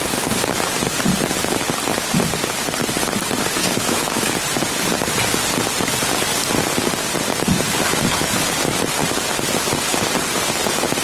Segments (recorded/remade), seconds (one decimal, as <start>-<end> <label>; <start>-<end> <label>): 0.0-3.6 recorded; 3.6-4.3 remade; 4.3-11.0 recorded